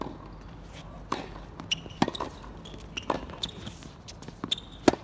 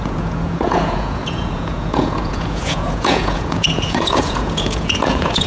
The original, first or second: first